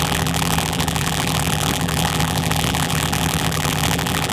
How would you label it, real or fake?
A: fake